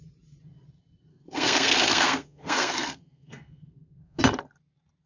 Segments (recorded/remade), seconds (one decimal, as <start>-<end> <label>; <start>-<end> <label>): 0.0-1.1 recorded; 1.1-4.2 remade; 4.2-5.1 recorded